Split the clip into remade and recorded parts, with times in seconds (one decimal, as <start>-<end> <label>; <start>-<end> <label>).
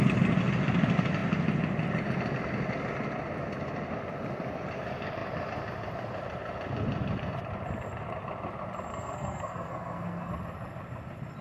0.0-8.9 recorded; 8.9-10.3 remade; 10.3-11.4 recorded